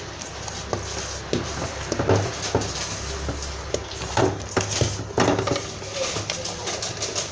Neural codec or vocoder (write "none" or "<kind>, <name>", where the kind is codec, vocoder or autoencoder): none